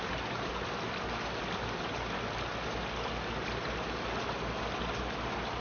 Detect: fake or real real